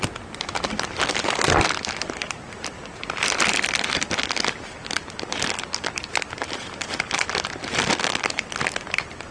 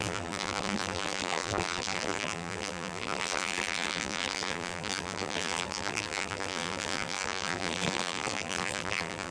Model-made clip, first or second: second